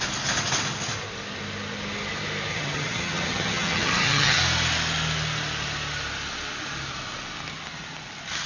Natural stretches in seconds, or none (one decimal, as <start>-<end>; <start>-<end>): 0.0-2.5; 4.4-8.5